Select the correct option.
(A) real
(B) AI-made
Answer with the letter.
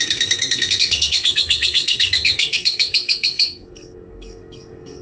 B